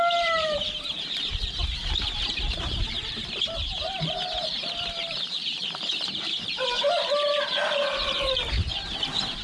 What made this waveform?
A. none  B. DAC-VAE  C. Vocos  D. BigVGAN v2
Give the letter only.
D